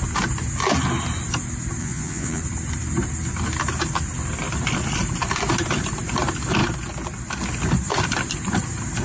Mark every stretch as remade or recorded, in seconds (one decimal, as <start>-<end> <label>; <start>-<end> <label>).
0.0-1.8 recorded; 1.8-2.4 remade; 2.4-9.0 recorded